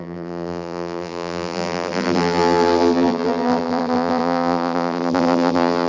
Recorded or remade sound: remade